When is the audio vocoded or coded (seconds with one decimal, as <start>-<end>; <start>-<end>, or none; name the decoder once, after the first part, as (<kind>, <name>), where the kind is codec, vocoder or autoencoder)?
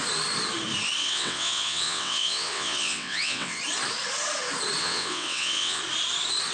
1.0-3.6 (vocoder, WaveNeXt); 4.8-5.8